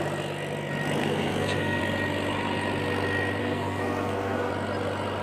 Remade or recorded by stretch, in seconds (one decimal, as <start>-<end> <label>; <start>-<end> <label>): 0.0-1.0 recorded; 1.0-1.8 remade; 1.8-3.4 recorded; 3.4-4.5 remade; 4.5-5.2 recorded